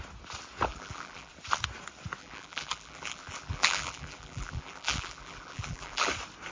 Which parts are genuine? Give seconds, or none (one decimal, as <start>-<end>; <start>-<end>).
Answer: 0.0-0.7; 1.3-2.2; 6.1-6.5